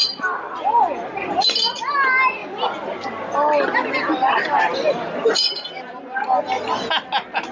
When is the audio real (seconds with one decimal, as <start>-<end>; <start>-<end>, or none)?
0.0-7.5